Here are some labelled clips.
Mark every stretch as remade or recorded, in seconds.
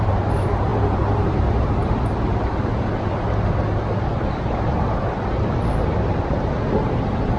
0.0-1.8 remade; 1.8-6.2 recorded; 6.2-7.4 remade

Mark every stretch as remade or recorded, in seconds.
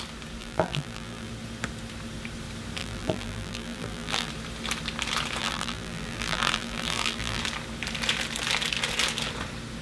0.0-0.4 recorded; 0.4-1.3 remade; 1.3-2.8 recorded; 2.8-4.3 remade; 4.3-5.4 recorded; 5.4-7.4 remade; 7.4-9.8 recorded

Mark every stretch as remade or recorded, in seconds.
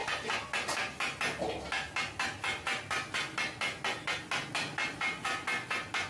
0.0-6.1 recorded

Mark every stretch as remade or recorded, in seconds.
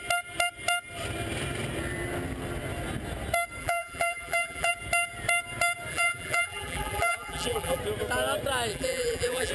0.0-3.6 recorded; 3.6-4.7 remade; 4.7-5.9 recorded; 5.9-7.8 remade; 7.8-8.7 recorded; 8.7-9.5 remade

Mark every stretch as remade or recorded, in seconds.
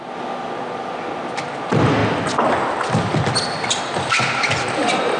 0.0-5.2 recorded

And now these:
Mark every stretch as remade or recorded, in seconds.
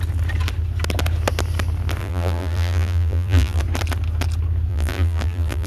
0.0-2.0 recorded; 2.0-3.6 remade; 3.6-4.7 recorded; 4.7-5.7 remade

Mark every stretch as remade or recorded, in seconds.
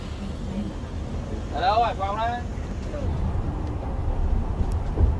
0.0-5.2 recorded